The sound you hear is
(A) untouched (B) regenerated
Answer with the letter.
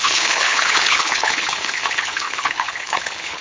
B